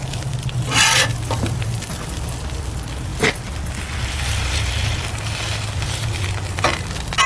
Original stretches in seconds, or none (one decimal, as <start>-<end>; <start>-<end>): 0.0-7.3